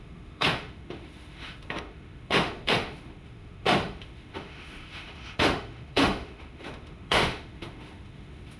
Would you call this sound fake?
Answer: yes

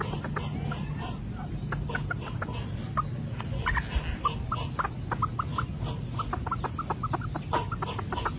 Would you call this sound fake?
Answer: no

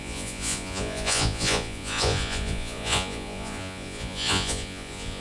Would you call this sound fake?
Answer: yes